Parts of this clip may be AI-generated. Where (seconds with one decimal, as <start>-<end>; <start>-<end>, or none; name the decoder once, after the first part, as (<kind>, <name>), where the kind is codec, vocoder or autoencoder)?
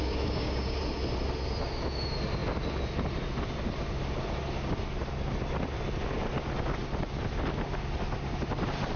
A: 0.0-0.8 (codec, DAC)